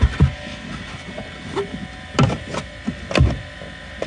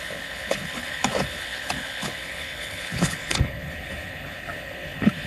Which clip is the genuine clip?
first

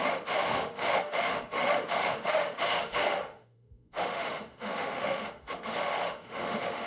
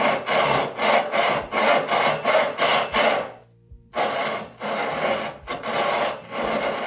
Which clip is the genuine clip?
second